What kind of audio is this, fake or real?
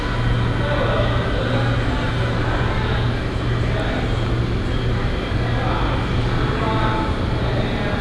real